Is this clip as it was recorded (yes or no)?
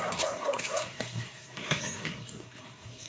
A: no